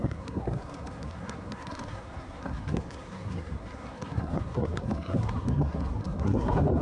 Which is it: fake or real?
fake